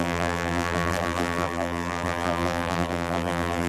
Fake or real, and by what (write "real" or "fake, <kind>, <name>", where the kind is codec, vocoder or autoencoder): fake, vocoder, BigVGAN v2